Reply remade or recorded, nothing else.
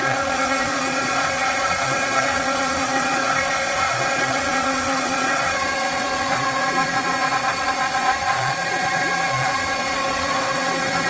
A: remade